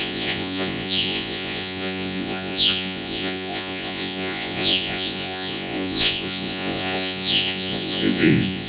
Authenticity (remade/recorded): remade